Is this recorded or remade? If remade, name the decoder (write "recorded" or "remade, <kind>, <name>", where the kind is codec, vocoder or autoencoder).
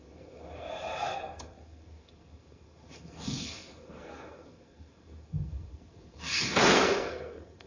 remade, codec, SNAC